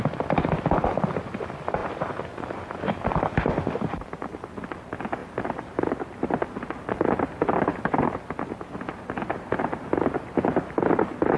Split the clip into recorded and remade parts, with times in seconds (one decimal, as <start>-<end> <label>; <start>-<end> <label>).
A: 0.0-11.4 recorded